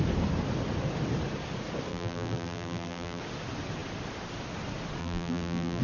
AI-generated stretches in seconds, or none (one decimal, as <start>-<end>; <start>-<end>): 1.9-3.2; 5.0-5.8